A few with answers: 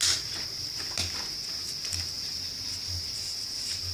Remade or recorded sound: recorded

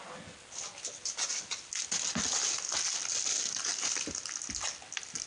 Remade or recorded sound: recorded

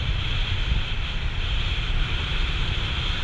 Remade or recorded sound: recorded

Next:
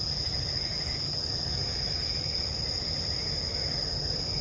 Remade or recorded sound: recorded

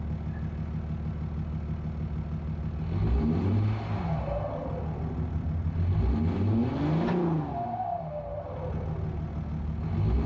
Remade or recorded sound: recorded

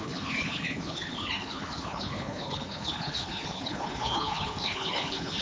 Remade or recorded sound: remade